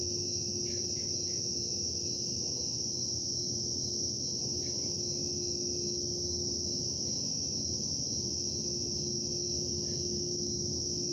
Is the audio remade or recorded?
recorded